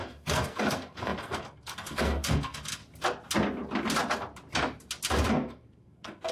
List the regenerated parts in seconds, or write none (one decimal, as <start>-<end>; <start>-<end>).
0.0-2.8; 5.3-6.3